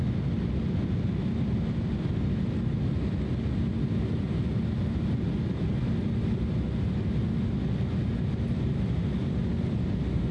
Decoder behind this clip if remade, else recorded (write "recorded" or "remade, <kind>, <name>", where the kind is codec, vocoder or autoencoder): recorded